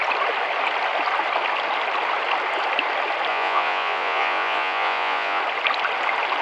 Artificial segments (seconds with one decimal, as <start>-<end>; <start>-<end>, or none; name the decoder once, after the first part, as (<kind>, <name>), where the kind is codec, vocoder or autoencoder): 3.3-5.4 (vocoder, Vocos)

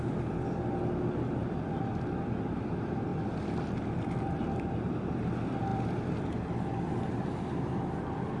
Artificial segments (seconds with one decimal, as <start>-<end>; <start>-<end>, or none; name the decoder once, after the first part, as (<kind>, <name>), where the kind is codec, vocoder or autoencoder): 1.4-2.5 (vocoder, BigVGAN v2); 3.1-4.4; 5.7-6.3

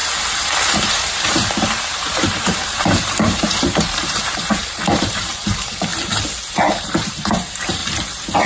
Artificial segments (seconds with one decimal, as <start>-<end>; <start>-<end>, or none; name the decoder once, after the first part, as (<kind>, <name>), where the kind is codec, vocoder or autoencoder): 0.8-5.9 (vocoder, BigVGAN v2); 6.8-7.8

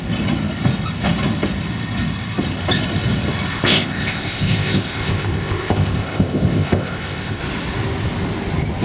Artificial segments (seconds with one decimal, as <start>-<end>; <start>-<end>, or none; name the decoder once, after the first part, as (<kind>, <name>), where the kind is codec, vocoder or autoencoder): 3.5-7.4 (codec, ZipCodec)

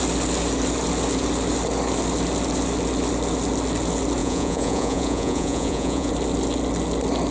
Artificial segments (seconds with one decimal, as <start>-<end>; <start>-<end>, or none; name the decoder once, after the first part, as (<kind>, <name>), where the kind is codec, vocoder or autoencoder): 4.2-6.1 (vocoder, Vocos)

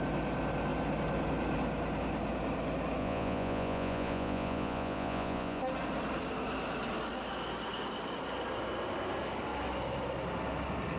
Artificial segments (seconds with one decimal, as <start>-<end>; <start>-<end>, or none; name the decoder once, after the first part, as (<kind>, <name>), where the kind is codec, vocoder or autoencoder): 3.0-5.6 (vocoder, Vocos)

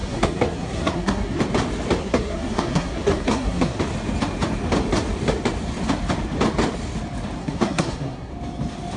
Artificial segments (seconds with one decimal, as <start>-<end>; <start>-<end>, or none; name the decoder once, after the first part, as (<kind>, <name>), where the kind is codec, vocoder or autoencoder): 0.0-1.4 (codec, SNAC); 2.0-3.8; 7.4-8.3

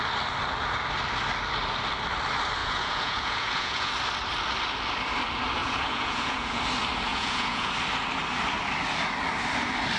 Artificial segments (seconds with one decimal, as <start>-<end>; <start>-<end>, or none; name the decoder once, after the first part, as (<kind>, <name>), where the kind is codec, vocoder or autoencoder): 2.6-3.9 (vocoder, Vocos); 5.6-6.6; 7.1-7.7